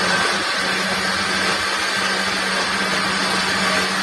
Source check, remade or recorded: recorded